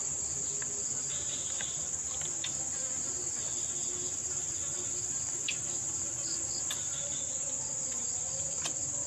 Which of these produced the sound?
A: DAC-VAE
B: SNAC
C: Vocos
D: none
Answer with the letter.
D